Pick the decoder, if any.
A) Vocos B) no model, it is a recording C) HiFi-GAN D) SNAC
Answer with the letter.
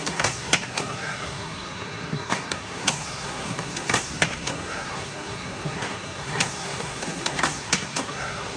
D